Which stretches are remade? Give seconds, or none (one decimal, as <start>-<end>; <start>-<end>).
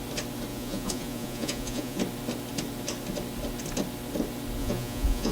0.5-2.0; 4.6-5.3